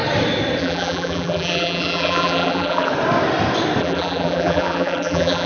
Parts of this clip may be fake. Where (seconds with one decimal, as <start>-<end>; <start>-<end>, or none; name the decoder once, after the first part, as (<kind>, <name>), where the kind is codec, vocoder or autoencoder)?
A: 0.6-2.9 (vocoder, BigVGAN v2); 3.8-5.5